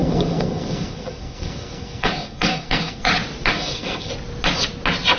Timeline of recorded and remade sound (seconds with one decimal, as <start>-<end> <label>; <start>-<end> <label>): 0.0-3.1 remade; 3.1-3.5 recorded; 3.5-4.1 remade; 4.1-5.2 recorded

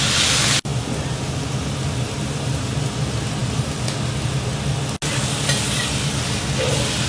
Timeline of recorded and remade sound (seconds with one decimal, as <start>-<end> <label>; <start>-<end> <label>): 0.0-7.1 recorded